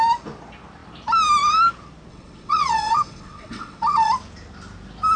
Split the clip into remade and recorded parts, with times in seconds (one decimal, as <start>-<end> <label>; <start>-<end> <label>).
0.0-2.1 recorded; 2.1-4.1 remade; 4.1-5.2 recorded